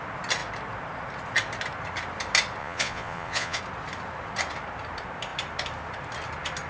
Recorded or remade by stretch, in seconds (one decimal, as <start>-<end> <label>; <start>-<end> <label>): 0.0-2.6 recorded; 2.6-3.6 remade; 3.6-6.7 recorded